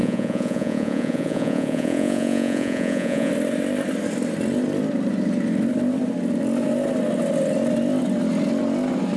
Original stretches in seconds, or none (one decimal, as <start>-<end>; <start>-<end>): 3.3-9.2